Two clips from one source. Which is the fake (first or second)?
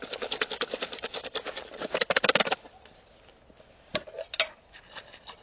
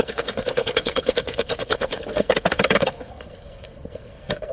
second